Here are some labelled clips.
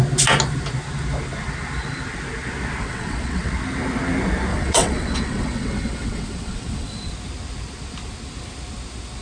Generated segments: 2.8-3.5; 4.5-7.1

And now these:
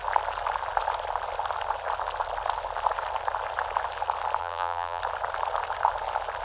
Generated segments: 4.4-5.0

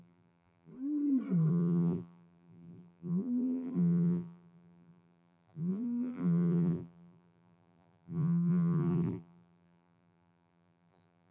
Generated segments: 0.0-0.7; 1.5-11.3

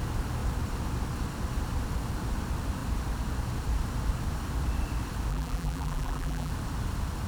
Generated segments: 5.3-6.5

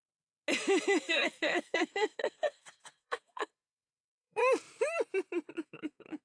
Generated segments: 1.1-4.4; 5.5-6.2